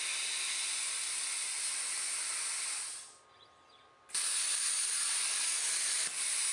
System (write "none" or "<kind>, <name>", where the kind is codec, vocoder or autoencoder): none